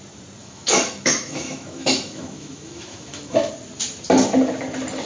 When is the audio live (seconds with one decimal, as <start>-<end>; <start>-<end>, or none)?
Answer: 0.0-0.4; 3.5-5.1